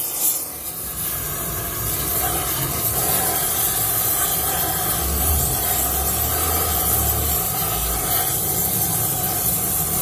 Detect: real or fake real